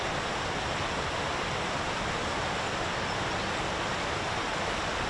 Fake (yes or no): no